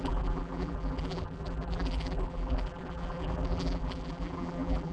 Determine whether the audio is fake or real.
fake